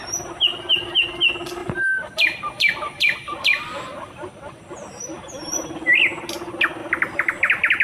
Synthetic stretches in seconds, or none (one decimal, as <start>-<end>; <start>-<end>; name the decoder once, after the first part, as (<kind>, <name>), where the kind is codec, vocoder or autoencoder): 1.6-4.7 (vocoder, BigVGAN v2)